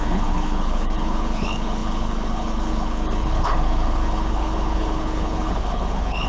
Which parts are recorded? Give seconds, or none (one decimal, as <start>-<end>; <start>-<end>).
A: none